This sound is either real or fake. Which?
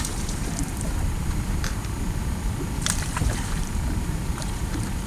fake